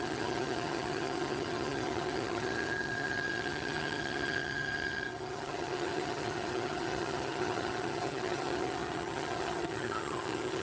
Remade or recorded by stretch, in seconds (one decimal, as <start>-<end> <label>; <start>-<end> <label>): 0.0-10.6 remade